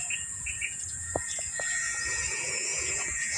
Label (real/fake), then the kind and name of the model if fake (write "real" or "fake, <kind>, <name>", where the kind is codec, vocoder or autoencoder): fake, vocoder, Vocos